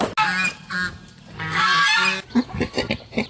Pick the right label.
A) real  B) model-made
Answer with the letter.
A